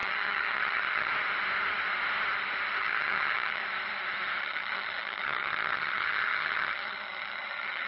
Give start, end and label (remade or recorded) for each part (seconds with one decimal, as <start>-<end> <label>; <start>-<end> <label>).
0.0-1.1 remade; 1.1-2.8 recorded; 2.8-3.6 remade; 3.6-4.4 recorded; 4.4-7.9 remade